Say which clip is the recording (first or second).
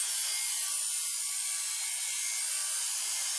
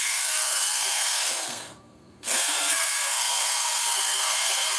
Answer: first